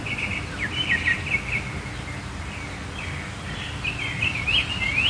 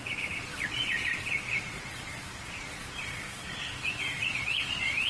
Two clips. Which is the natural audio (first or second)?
first